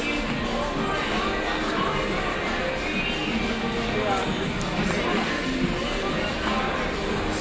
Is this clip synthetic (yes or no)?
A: no